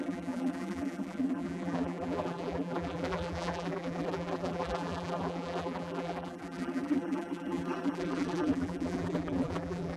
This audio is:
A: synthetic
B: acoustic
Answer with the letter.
A